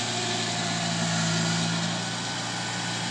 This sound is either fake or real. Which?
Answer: real